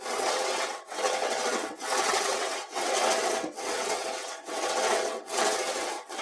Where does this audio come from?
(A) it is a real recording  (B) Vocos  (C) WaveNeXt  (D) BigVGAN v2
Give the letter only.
C